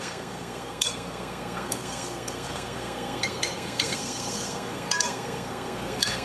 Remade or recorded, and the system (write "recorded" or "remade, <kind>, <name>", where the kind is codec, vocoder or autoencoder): remade, codec, SNAC